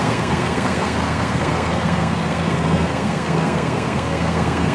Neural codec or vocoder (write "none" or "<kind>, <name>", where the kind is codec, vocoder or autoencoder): codec, SNAC